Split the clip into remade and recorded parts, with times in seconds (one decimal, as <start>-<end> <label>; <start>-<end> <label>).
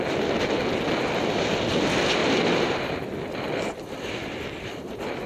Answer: 0.0-5.3 recorded